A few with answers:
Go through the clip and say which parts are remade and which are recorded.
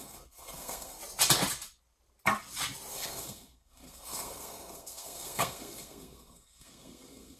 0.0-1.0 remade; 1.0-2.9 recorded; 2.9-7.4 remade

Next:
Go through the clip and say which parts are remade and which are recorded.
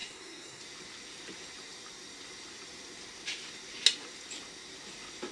0.0-0.6 remade; 0.6-5.3 recorded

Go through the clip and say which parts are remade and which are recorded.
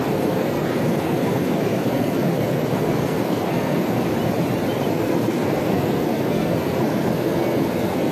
0.0-4.1 remade; 4.1-4.9 recorded; 4.9-8.1 remade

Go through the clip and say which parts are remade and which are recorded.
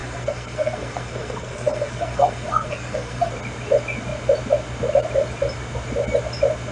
0.0-3.3 remade; 3.3-6.7 recorded